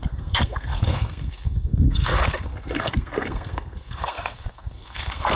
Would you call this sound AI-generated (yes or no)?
yes